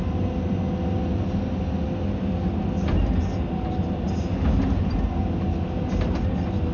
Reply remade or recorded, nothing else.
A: recorded